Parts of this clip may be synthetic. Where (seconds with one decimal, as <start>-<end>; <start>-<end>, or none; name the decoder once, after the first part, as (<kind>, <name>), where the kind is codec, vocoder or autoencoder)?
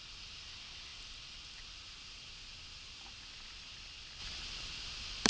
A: none